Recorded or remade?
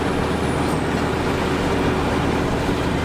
recorded